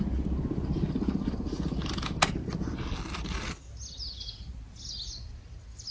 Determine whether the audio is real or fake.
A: real